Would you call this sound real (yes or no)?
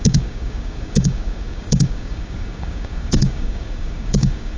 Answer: no